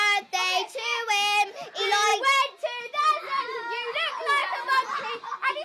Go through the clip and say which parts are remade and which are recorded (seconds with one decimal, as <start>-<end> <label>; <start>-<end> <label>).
0.0-5.6 recorded